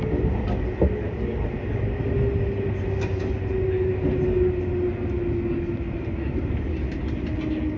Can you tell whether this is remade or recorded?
recorded